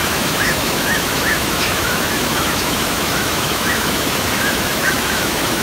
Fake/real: fake